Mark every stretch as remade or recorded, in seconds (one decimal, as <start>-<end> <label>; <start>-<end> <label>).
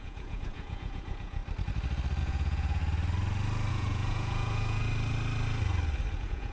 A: 0.0-1.4 remade; 1.4-2.2 recorded; 2.2-2.8 remade; 2.8-3.7 recorded; 3.7-4.8 remade; 4.8-6.1 recorded; 6.1-6.5 remade